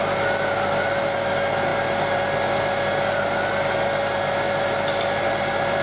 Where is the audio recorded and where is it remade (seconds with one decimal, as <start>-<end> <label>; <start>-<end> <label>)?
0.0-5.8 recorded